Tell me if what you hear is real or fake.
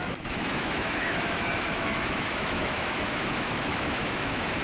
fake